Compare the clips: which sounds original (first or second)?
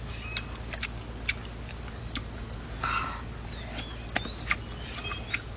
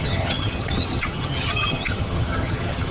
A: first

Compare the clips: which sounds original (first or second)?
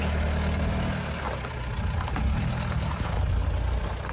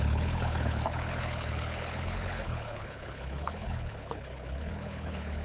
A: first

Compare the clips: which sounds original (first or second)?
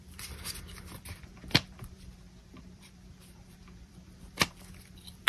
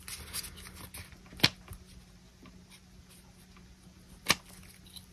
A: second